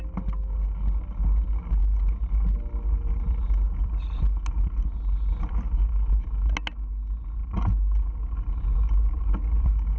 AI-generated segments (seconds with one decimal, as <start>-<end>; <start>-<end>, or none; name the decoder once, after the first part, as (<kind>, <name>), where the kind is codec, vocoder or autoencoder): none